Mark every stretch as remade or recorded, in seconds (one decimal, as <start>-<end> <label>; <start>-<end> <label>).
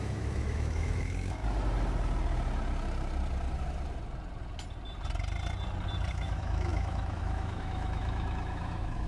0.0-1.4 remade; 1.4-6.1 recorded; 6.1-9.1 remade